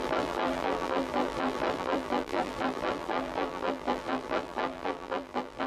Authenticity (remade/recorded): remade